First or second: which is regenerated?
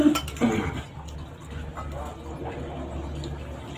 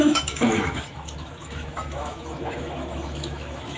second